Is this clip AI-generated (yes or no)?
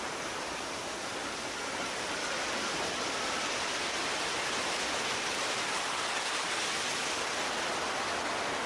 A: no